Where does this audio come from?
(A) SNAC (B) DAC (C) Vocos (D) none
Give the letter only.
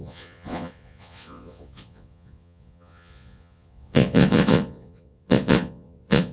C